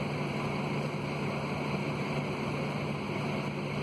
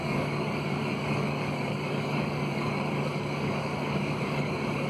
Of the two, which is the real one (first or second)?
first